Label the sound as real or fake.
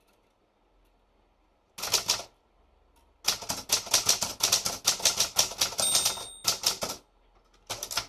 real